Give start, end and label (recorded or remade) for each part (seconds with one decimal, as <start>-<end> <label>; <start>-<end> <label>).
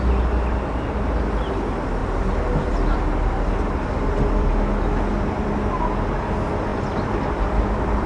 0.0-2.0 recorded; 2.0-4.5 remade; 4.5-6.7 recorded; 6.7-8.1 remade